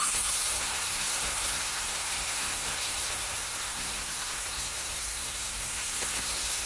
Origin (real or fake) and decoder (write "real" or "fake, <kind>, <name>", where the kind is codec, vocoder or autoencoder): fake, codec, SNAC